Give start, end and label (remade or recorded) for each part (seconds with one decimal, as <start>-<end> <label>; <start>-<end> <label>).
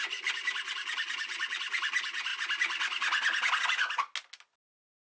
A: 0.0-5.1 recorded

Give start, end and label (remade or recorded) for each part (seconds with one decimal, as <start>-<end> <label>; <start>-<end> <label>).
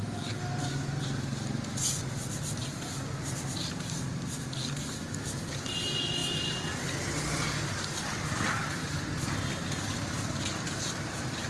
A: 0.0-11.5 recorded